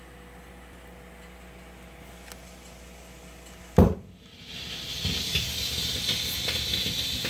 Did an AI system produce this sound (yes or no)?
no